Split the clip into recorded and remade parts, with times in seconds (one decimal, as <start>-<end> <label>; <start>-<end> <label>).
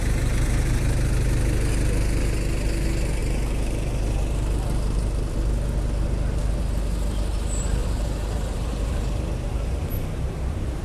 0.0-0.8 remade; 0.8-3.2 recorded; 3.2-5.3 remade; 5.3-7.8 recorded; 7.8-10.8 remade